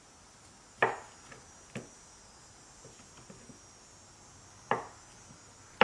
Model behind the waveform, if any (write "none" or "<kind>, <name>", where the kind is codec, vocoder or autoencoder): none